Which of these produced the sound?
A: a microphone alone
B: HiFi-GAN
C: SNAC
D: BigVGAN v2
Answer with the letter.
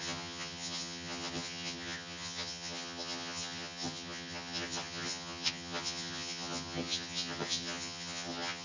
B